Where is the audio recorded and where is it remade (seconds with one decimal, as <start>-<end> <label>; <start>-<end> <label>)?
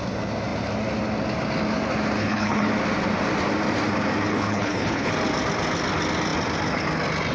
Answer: 0.0-2.2 recorded; 2.2-2.7 remade; 2.7-4.3 recorded; 4.3-5.1 remade; 5.1-7.3 recorded